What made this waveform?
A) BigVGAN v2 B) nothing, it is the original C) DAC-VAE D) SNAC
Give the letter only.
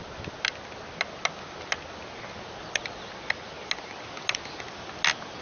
B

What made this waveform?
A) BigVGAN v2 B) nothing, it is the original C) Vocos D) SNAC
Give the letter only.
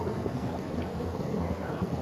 D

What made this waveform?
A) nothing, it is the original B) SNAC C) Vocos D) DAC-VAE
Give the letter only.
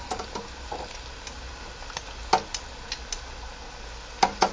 A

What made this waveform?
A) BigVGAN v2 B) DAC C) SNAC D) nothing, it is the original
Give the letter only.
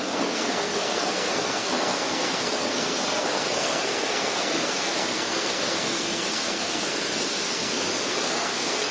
C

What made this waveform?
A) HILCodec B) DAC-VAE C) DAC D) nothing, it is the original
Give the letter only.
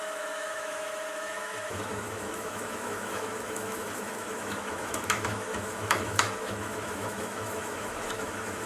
B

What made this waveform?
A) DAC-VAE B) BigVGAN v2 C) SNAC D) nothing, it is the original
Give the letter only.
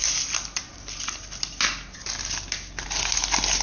D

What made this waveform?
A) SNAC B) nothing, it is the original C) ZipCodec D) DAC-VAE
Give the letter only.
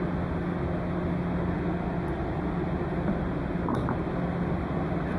B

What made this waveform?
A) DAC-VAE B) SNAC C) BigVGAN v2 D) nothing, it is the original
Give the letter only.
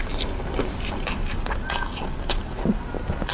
D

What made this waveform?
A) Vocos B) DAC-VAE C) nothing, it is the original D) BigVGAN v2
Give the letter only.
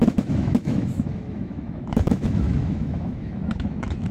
B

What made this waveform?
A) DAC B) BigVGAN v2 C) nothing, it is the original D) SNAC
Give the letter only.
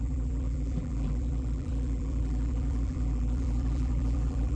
B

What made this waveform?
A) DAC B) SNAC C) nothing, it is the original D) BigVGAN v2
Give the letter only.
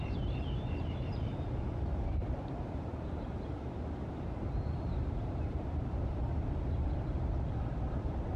D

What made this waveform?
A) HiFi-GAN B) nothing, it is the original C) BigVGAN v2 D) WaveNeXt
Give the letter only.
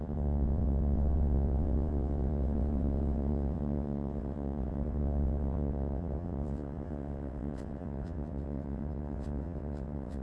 D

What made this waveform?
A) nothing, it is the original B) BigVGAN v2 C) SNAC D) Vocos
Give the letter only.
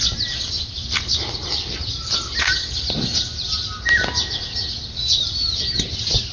A